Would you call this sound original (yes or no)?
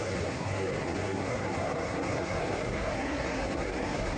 no